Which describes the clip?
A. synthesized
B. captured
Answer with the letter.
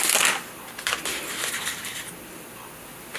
B